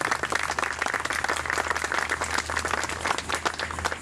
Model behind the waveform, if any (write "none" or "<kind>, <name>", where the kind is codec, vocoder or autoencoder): none